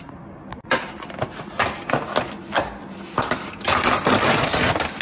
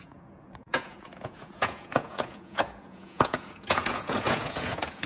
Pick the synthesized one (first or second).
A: second